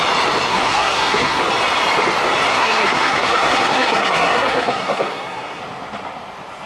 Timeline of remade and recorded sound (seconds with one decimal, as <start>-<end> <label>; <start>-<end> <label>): 0.0-0.5 recorded; 0.5-1.4 remade; 1.4-2.5 recorded; 2.5-5.6 remade; 5.6-6.7 recorded